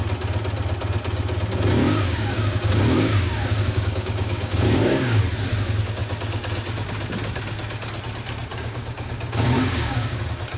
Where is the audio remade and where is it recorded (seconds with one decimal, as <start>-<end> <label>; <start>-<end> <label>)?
0.0-1.8 recorded; 1.8-5.2 remade; 5.2-8.5 recorded; 8.5-10.2 remade; 10.2-10.6 recorded